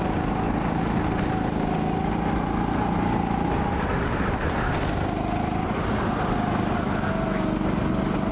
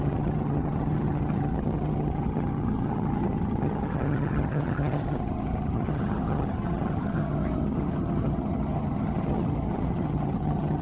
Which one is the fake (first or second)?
second